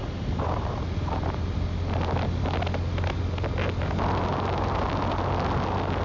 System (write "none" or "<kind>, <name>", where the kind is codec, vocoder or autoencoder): none